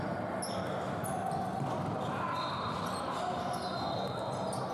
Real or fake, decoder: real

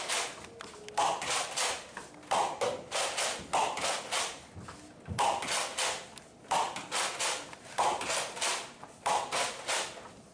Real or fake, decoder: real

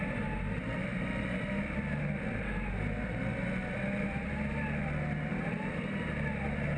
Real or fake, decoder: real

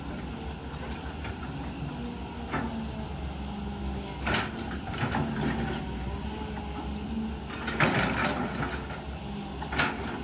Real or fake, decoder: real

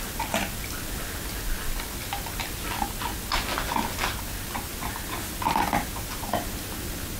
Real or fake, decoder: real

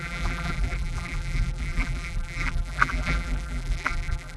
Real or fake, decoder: fake, vocoder, BigVGAN v2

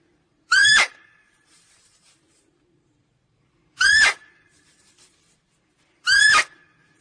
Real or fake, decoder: fake, vocoder, BigVGAN v2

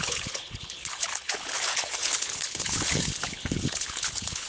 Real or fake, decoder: fake, codec, HILCodec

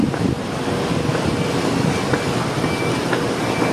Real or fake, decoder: real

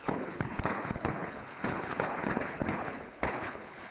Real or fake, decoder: fake, codec, HILCodec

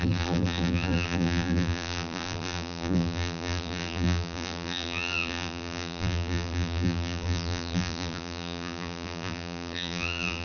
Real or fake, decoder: fake, vocoder, BigVGAN v2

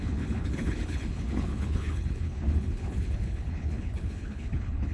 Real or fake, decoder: fake, codec, HILCodec